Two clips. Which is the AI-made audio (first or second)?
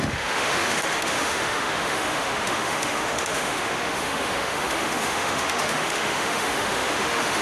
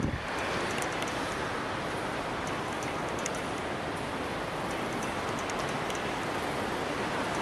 first